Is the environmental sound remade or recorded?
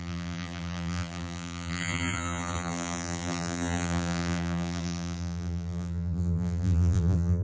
remade